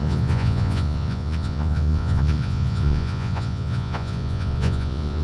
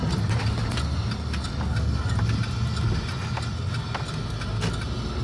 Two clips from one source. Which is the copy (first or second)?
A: first